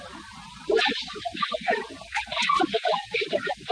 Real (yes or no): yes